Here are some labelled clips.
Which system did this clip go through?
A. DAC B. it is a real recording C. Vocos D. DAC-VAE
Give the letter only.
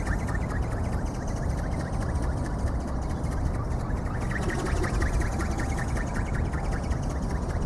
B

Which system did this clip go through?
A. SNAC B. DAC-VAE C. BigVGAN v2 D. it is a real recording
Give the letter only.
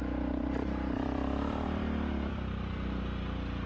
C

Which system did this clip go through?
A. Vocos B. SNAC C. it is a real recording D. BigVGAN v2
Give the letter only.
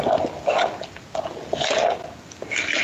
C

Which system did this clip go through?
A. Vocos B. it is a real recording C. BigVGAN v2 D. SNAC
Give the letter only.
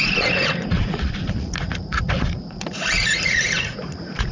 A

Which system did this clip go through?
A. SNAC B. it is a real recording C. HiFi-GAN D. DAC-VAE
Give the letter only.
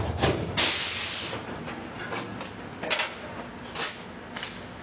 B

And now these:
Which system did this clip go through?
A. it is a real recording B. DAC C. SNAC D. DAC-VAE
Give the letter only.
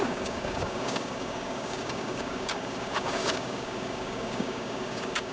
B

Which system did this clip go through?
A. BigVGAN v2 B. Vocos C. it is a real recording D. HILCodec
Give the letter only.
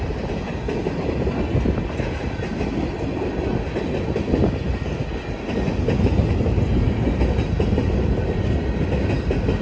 C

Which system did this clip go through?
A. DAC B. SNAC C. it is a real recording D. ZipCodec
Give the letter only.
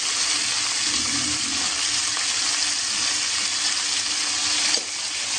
C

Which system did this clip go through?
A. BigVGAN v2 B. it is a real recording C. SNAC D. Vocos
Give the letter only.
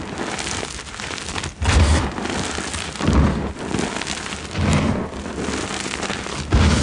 B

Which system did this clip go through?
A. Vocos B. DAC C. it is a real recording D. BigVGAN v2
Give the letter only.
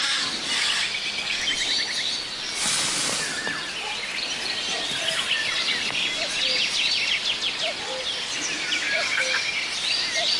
C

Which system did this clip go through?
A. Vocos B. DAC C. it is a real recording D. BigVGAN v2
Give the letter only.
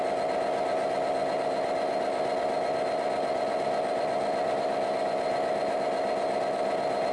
C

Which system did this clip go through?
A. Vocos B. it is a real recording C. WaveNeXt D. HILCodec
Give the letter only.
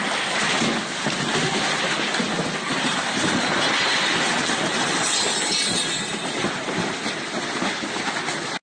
B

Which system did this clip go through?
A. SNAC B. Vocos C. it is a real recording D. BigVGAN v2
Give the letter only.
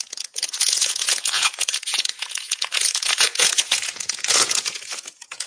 B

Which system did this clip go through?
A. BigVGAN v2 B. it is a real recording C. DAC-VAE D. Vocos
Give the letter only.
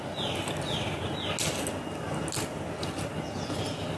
B